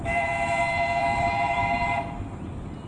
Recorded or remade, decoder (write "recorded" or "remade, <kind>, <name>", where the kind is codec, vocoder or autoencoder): remade, vocoder, BigVGAN v2